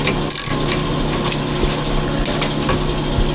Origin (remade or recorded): recorded